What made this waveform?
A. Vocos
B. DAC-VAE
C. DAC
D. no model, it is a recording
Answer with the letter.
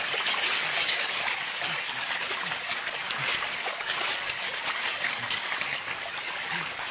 C